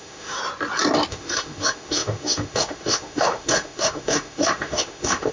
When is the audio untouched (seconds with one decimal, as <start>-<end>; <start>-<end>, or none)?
0.4-1.1